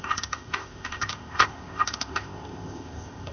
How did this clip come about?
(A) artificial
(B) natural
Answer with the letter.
A